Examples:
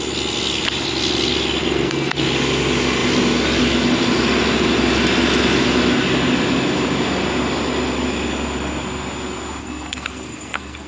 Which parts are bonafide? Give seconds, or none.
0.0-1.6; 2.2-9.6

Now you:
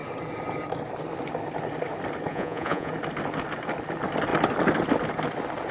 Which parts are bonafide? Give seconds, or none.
0.0-2.3; 2.9-5.7

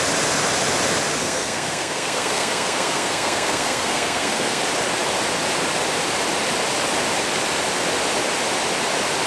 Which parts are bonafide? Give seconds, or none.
0.0-1.2; 4.6-9.3

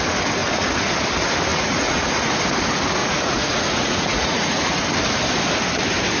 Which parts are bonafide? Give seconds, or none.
0.0-0.4; 0.9-1.5; 2.4-3.0; 4.8-6.2

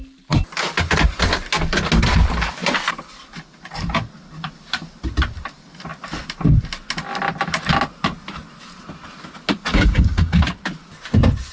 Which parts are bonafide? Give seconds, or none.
0.0-9.7; 10.4-11.5

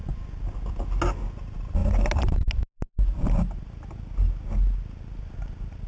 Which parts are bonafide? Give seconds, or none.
0.0-5.9

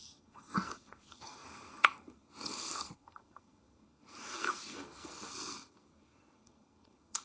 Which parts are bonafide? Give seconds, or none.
none

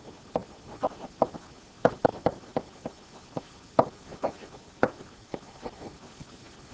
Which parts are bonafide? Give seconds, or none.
0.0-2.1; 6.1-6.7